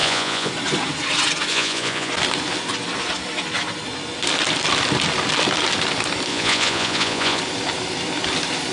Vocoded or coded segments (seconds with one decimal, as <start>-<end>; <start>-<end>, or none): 0.0-0.5; 1.5-2.1; 6.3-7.4